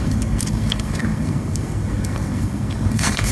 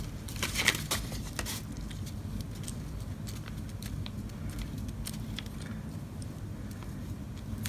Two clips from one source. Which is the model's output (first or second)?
first